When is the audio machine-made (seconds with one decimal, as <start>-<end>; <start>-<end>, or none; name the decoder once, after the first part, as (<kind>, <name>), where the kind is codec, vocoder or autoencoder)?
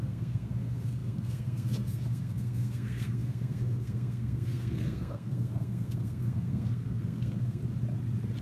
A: 0.0-7.6 (codec, SNAC)